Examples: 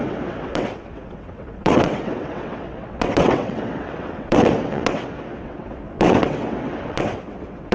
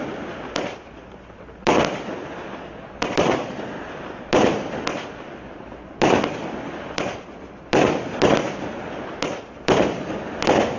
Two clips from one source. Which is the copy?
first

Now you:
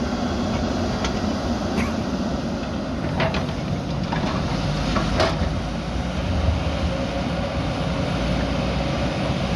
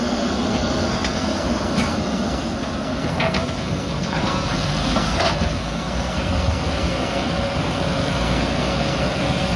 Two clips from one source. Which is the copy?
second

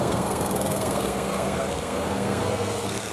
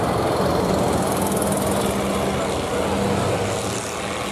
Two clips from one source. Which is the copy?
first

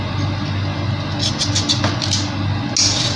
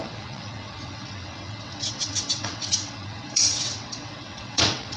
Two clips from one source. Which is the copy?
second